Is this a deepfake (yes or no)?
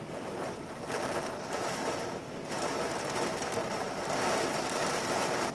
yes